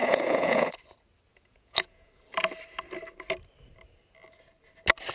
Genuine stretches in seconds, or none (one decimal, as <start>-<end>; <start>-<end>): 0.7-1.3; 2.1-5.1